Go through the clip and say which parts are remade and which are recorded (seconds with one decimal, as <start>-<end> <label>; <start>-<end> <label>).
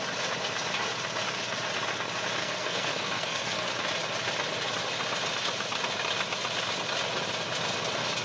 0.0-2.4 recorded; 2.4-3.7 remade; 3.7-8.2 recorded